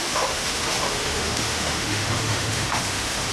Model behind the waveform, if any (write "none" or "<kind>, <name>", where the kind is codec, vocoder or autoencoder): autoencoder, DAC-VAE